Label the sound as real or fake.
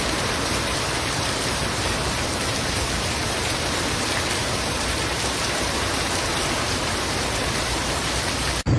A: fake